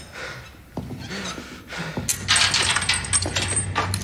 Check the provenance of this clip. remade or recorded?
recorded